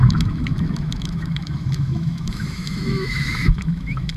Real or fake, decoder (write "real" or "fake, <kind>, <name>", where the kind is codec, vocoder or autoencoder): fake, autoencoder, DAC-VAE